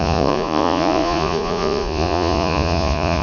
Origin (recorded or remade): remade